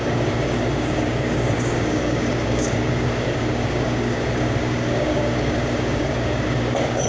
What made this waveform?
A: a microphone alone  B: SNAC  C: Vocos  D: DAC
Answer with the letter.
D